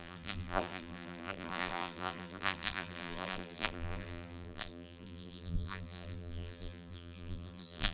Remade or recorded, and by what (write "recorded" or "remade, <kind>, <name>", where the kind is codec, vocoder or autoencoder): remade, vocoder, BigVGAN v2